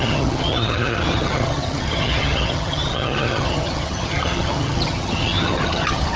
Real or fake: fake